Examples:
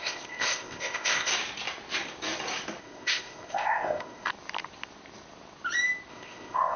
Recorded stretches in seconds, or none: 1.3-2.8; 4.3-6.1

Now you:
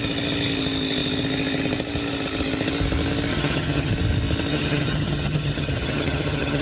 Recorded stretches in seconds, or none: 0.0-3.3; 3.9-4.5

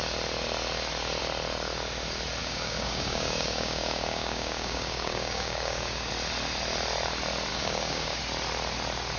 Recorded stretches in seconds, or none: 0.0-2.4; 6.1-7.5; 8.2-9.2